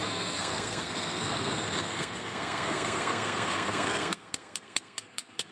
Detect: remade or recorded remade